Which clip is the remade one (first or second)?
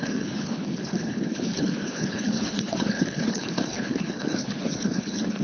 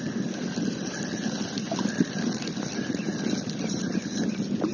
first